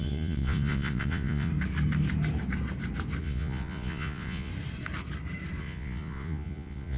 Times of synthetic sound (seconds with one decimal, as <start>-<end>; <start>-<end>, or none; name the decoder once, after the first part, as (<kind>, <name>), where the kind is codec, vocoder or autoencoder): 0.0-1.5 (vocoder, Vocos); 3.2-4.5; 5.6-7.0